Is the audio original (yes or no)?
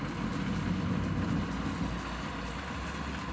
yes